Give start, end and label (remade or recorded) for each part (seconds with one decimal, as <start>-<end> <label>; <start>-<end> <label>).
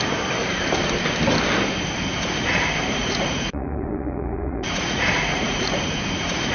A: 0.0-3.0 recorded; 3.0-6.5 remade